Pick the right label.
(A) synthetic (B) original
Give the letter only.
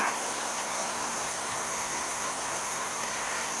A